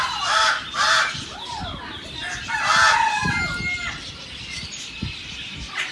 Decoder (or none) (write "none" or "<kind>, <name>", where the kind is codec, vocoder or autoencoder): none